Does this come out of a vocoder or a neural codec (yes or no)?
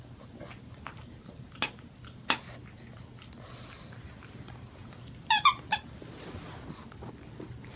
no